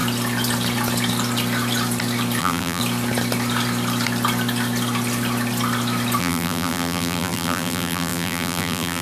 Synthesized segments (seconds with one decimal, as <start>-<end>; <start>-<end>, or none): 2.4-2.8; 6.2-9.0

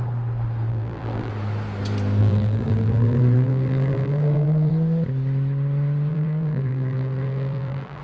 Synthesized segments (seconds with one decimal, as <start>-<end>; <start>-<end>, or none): 0.7-1.3; 2.2-4.7; 6.1-8.0

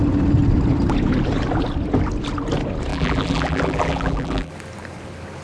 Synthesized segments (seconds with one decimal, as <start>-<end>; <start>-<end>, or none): 2.9-4.5

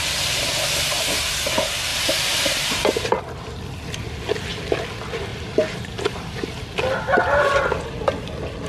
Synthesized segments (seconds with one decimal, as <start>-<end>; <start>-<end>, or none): 1.9-3.1; 5.3-6.6